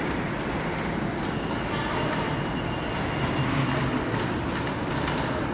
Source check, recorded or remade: recorded